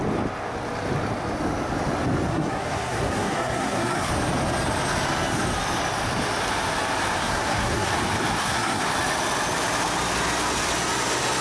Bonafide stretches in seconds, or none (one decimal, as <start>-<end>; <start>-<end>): 0.0-2.3; 4.1-7.2; 7.9-8.4; 8.9-11.4